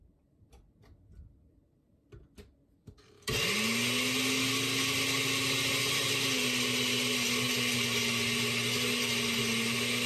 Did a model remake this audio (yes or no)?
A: no